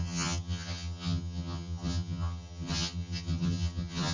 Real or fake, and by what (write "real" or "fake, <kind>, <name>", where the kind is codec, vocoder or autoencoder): fake, vocoder, HiFi-GAN